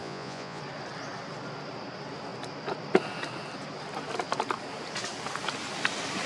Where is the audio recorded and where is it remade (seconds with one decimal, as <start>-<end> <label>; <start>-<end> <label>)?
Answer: 0.0-0.6 remade; 0.6-6.3 recorded

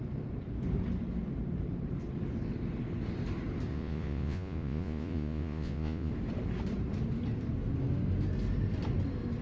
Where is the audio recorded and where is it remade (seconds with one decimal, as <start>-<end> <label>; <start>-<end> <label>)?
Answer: 0.0-3.7 recorded; 3.7-6.1 remade; 6.1-9.4 recorded

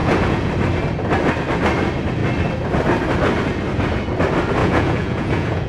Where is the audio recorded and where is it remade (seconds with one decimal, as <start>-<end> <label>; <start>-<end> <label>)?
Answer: 0.0-0.5 remade; 0.5-4.6 recorded; 4.6-5.7 remade

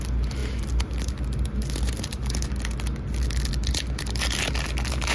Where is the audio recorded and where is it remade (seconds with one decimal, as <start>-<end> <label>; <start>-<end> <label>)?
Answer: 0.0-5.1 recorded

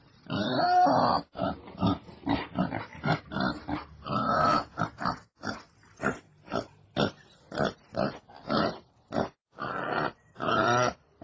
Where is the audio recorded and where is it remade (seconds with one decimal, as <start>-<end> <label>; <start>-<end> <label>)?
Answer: 0.0-4.3 recorded; 4.3-4.8 remade; 4.8-11.2 recorded